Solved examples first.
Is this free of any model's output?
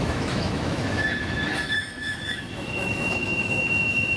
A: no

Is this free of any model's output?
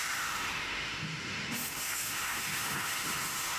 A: no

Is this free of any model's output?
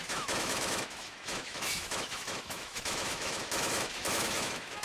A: no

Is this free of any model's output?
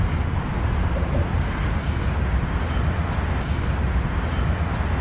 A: yes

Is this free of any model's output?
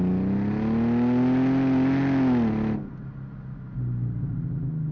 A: yes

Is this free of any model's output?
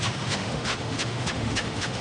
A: no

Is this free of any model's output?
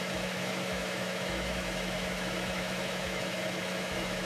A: no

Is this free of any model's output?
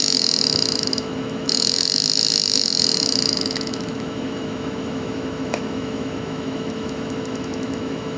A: no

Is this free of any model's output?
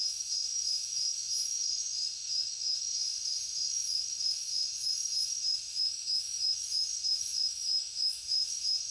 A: no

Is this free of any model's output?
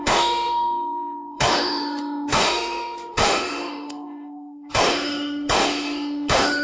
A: no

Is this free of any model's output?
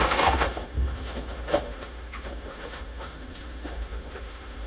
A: no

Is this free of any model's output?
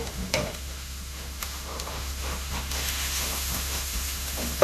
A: no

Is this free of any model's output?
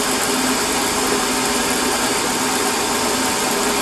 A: yes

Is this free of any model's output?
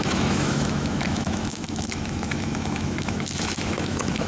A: no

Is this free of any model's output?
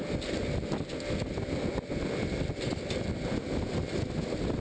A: yes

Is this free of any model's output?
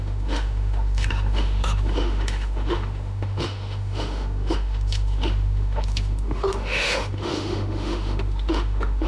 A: no